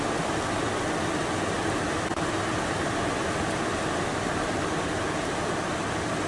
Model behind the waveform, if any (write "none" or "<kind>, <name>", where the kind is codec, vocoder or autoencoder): none